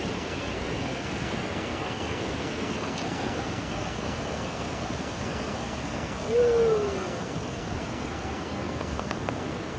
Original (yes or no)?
no